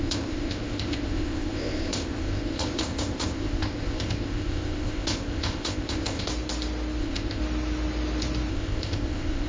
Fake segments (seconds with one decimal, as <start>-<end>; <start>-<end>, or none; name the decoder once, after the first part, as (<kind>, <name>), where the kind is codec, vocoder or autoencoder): 0.0-6.3 (codec, ZipCodec); 7.0-7.4; 8.5-9.5